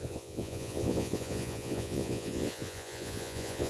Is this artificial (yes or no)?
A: yes